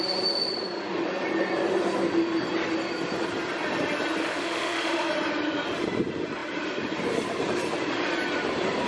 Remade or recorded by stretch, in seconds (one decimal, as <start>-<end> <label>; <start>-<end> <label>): 0.0-4.2 recorded; 4.2-5.1 remade; 5.1-8.9 recorded